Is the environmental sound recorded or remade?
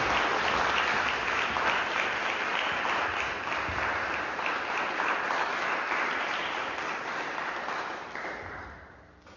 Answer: recorded